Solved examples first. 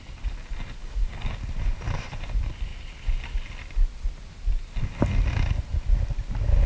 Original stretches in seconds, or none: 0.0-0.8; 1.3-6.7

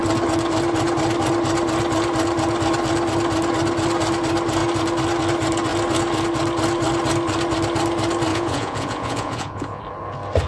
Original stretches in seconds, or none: 0.0-8.3; 9.8-10.5